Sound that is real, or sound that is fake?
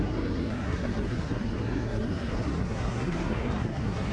fake